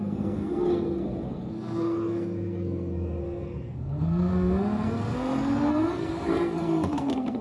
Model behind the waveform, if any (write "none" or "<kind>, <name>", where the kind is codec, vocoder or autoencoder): codec, SNAC